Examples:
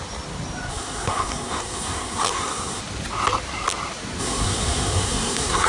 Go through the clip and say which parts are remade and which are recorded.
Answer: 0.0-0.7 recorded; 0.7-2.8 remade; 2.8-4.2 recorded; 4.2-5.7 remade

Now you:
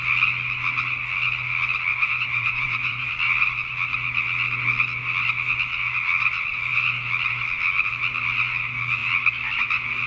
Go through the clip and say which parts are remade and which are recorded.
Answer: 0.0-1.9 recorded; 1.9-3.1 remade; 3.1-10.1 recorded

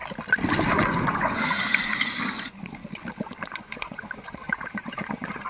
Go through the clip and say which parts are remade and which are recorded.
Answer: 0.0-0.7 recorded; 0.7-2.8 remade; 2.8-3.4 recorded; 3.4-5.5 remade